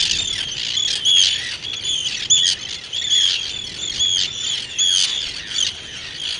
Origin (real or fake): real